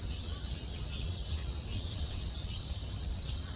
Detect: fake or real fake